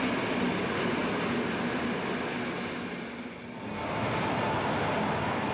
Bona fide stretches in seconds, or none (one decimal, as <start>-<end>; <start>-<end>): 0.0-5.5